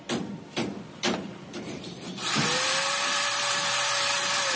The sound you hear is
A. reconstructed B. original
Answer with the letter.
A